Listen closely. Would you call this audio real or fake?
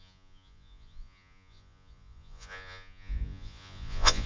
fake